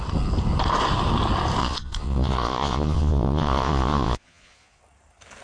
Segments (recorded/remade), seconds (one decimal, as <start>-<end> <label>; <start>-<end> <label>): 0.0-1.6 recorded; 1.6-4.8 remade; 4.8-5.4 recorded